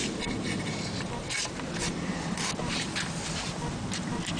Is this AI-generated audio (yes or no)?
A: yes